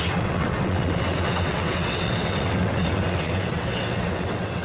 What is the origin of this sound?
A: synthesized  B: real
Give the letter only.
A